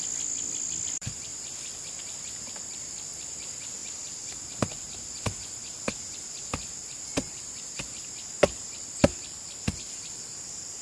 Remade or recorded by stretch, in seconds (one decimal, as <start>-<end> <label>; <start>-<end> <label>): 0.0-1.3 remade; 1.3-2.1 recorded; 2.1-3.8 remade; 3.8-7.1 recorded; 7.1-10.8 remade